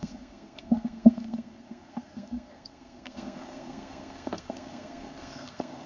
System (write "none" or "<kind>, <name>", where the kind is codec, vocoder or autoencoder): codec, SNAC